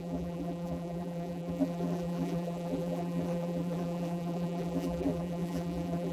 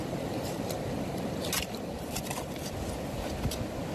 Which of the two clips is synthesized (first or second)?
first